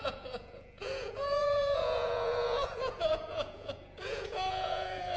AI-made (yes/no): yes